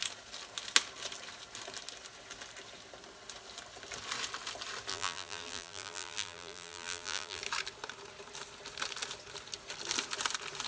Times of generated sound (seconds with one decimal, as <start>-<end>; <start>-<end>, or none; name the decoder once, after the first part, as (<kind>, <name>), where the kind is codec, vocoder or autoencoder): 4.9-7.4 (vocoder, BigVGAN v2)